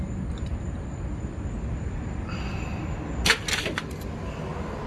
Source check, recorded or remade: recorded